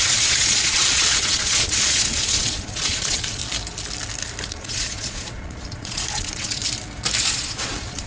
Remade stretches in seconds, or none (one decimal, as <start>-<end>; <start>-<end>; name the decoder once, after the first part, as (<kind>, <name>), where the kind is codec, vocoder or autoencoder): 0.0-3.4 (vocoder, Vocos); 4.5-6.6; 7.2-8.1